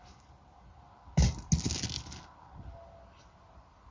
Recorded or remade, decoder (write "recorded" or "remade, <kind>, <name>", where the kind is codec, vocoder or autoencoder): recorded